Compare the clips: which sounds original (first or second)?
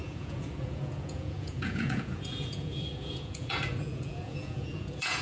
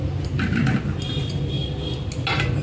second